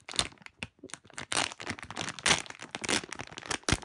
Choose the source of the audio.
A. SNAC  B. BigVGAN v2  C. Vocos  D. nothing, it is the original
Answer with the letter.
D